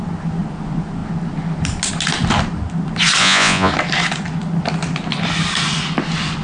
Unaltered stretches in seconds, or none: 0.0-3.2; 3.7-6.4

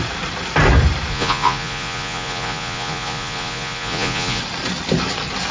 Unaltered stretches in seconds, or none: 0.0-1.1; 4.4-5.5

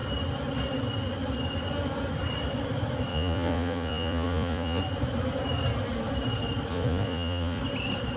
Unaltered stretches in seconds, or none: 0.0-3.1; 4.8-6.7; 7.6-8.2

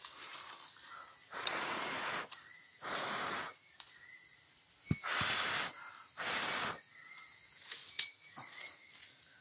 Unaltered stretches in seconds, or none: 0.0-1.2; 4.5-7.8; 8.9-9.4

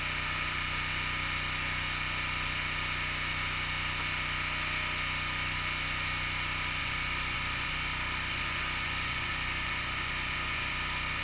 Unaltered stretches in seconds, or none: 0.0-6.8